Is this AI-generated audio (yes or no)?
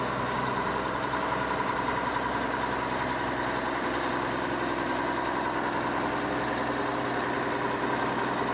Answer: no